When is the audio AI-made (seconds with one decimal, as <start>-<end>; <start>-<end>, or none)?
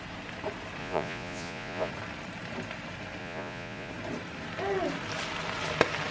0.8-1.9; 3.2-3.9